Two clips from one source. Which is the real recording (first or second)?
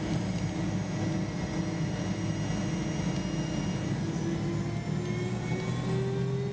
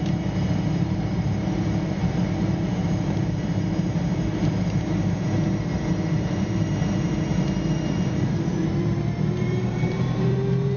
first